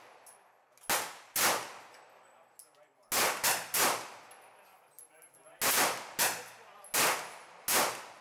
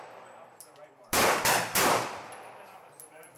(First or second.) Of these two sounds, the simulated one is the second